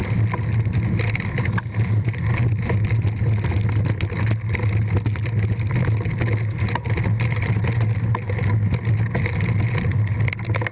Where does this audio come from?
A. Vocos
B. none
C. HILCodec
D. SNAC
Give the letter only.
B